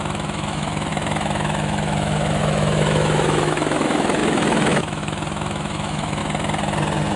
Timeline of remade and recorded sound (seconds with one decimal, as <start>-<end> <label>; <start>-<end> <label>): 0.0-6.2 remade; 6.2-7.2 recorded